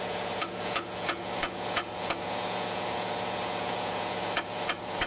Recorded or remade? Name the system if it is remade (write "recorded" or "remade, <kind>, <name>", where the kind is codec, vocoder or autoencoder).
remade, vocoder, Vocos